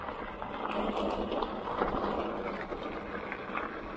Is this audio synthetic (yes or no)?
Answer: no